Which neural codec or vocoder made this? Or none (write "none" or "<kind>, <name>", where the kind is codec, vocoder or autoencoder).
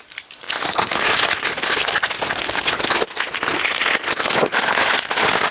none